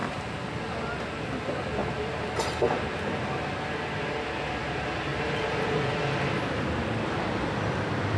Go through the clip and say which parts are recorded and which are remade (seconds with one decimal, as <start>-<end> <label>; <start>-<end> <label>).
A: 0.0-0.6 remade; 0.6-1.8 recorded; 1.8-4.0 remade; 4.0-5.1 recorded; 5.1-5.9 remade; 5.9-8.2 recorded